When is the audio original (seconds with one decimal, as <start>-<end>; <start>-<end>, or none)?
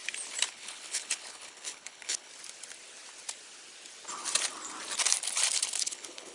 0.0-0.5; 2.3-5.8